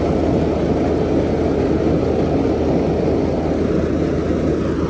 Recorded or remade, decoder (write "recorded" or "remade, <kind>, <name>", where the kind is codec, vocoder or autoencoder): recorded